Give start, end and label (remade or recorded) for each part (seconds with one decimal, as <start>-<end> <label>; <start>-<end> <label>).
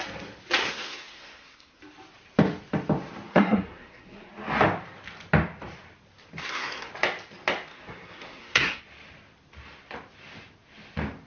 0.0-0.6 recorded; 0.6-1.8 remade; 1.8-3.3 recorded; 3.3-4.3 remade; 4.3-6.4 recorded; 6.4-6.9 remade; 6.9-7.7 recorded; 7.7-8.8 remade; 8.8-11.3 recorded